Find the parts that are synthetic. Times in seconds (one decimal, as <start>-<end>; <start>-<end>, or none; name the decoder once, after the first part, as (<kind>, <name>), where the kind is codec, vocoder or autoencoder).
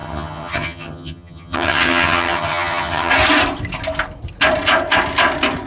0.0-3.1 (vocoder, HiFi-GAN)